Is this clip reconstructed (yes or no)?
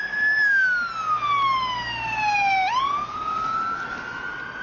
no